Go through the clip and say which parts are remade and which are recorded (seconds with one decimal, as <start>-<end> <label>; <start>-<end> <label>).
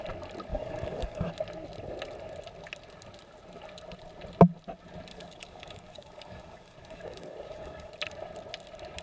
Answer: 0.0-0.5 recorded; 0.5-1.3 remade; 1.3-5.1 recorded; 5.1-7.9 remade; 7.9-9.0 recorded